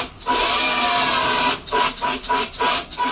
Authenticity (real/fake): real